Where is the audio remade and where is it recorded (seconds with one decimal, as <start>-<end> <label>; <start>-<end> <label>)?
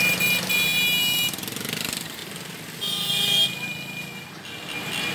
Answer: 0.0-5.1 recorded